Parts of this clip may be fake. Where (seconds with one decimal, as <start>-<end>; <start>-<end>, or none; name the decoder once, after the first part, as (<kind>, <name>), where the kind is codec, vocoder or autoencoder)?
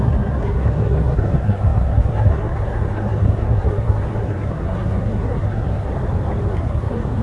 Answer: 0.0-5.9 (codec, SNAC); 6.5-7.2